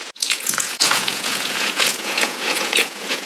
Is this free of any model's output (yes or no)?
no